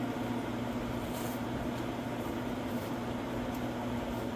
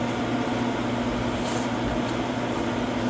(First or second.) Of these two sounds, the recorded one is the second